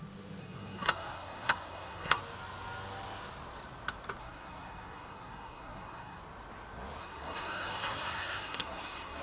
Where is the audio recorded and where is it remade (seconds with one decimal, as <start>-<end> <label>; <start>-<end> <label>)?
0.0-0.4 recorded; 0.4-2.2 remade; 2.2-4.2 recorded; 4.2-6.2 remade; 6.2-7.0 recorded; 7.0-9.2 remade